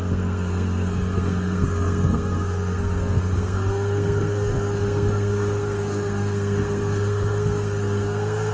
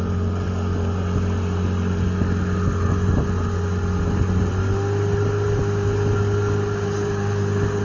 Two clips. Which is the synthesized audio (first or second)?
first